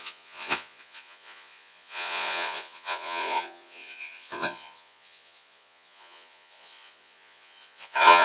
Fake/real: fake